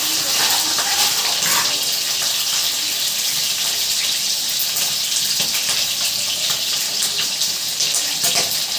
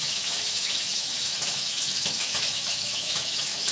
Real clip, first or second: first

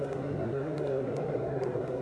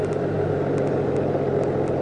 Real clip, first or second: second